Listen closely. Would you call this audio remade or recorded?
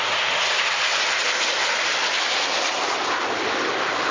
recorded